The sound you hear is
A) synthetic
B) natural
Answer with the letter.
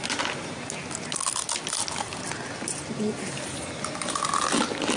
B